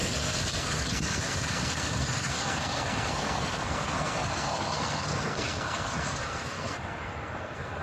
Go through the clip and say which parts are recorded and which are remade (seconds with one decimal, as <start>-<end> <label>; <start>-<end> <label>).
0.0-7.8 remade